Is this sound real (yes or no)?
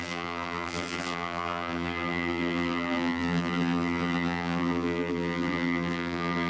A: no